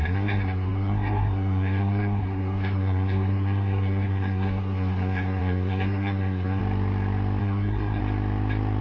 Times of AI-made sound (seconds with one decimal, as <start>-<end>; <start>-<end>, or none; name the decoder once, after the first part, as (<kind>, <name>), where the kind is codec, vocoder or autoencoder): 0.0-6.6 (codec, SNAC); 7.4-8.0

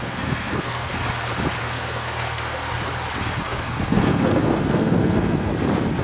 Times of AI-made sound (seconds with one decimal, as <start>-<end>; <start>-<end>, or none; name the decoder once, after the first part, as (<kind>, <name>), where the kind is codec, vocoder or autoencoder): 0.0-0.9 (codec, SNAC); 1.6-2.7; 3.4-5.5

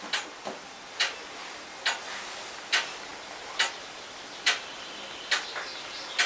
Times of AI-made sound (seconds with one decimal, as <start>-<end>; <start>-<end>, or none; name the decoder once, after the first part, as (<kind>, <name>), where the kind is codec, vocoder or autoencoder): none

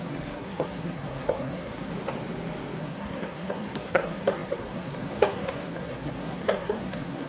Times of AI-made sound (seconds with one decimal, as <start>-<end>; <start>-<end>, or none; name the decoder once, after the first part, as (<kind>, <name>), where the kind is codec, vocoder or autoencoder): 0.0-1.9 (codec, SNAC); 2.8-7.3